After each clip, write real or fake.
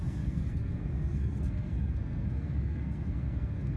fake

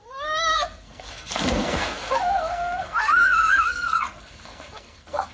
fake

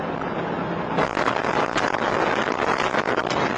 real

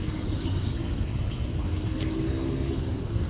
fake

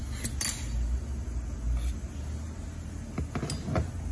real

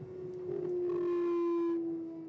real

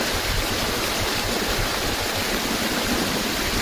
real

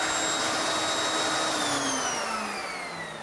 real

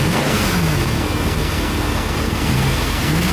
fake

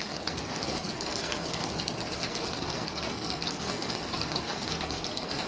fake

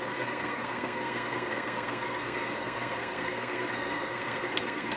fake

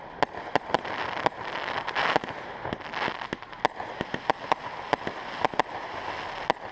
real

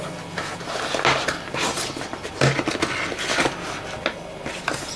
real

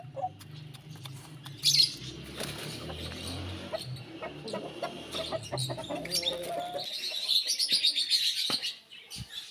real